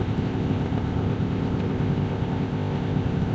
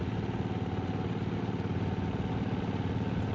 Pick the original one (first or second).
second